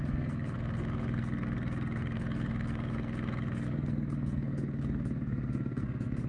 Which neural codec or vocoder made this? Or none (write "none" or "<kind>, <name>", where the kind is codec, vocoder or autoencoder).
codec, SNAC